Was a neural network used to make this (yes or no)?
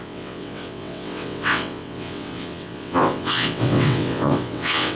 yes